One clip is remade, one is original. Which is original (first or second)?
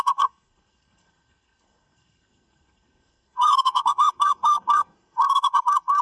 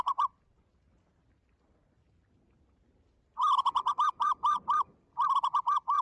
second